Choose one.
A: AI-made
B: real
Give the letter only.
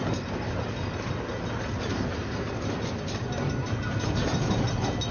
B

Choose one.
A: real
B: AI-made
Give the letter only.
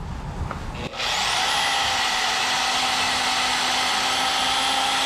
A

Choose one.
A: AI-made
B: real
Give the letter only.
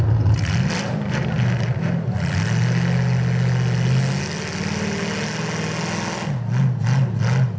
B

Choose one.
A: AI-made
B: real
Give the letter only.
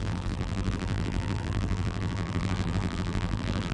A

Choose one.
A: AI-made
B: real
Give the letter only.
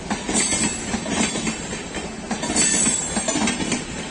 B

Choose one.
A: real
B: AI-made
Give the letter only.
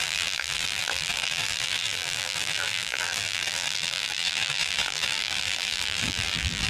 B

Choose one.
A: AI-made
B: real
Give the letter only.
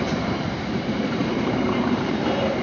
A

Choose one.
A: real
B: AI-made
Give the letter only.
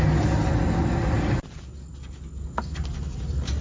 A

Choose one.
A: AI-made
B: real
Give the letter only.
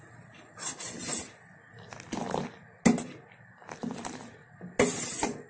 B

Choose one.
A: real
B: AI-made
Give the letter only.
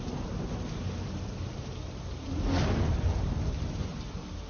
B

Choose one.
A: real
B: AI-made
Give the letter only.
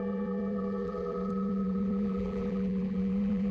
B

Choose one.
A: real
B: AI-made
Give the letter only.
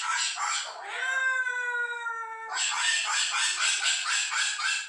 A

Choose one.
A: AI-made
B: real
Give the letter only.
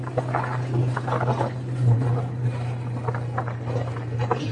B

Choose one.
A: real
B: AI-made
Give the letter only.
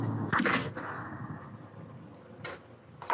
B